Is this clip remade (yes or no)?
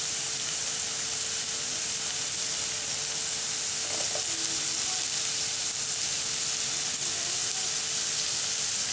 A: no